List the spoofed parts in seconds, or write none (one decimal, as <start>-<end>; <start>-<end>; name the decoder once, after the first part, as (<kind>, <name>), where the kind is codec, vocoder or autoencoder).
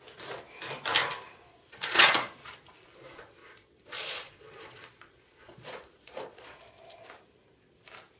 1.5-2.5 (vocoder, Vocos); 3.4-6.6